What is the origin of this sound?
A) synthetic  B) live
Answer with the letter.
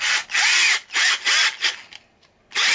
B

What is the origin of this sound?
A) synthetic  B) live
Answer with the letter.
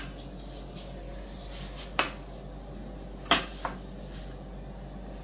B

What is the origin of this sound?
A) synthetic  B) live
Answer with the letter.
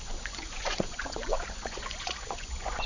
A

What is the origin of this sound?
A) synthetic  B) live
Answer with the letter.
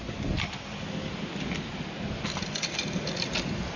B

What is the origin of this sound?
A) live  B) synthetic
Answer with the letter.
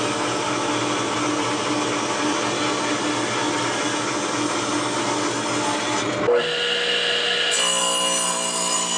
A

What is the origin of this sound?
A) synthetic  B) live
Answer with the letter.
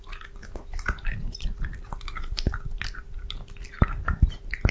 B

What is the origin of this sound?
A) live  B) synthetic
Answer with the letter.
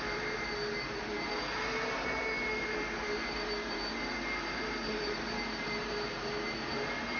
B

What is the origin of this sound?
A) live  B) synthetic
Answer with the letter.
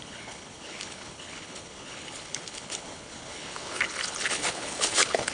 B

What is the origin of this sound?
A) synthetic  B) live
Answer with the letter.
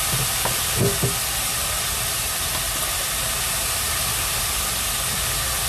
B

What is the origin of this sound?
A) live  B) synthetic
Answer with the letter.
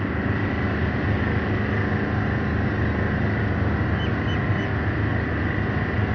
A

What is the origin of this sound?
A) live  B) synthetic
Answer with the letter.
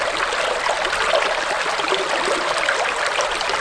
A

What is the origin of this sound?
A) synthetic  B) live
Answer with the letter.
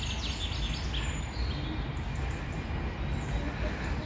B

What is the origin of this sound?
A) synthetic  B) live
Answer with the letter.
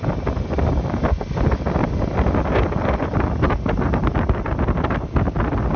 B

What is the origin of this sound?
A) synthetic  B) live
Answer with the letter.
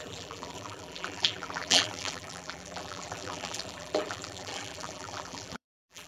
A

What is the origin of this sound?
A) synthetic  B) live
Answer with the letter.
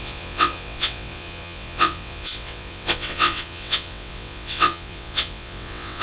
A